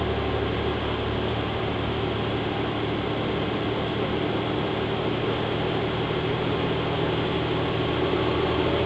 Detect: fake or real real